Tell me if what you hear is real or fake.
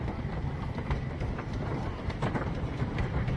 real